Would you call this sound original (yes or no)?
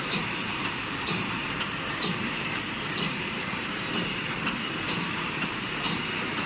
no